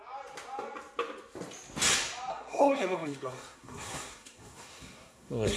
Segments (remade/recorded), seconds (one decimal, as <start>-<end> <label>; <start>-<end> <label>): 0.0-2.3 recorded; 2.3-5.6 remade